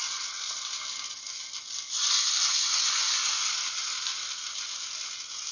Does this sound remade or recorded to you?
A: recorded